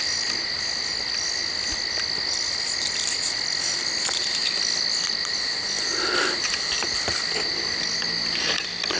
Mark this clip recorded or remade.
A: recorded